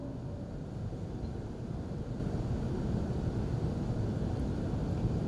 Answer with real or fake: real